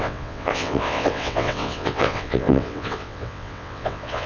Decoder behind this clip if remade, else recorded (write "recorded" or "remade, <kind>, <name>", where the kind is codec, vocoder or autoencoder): remade, vocoder, WaveNeXt